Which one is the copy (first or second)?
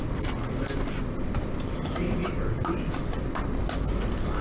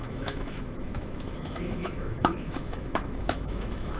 second